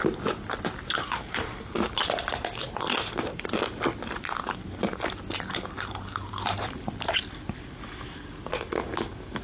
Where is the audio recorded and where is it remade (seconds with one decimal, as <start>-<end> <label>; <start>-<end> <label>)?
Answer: 0.0-9.4 recorded